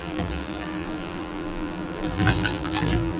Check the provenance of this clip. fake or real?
fake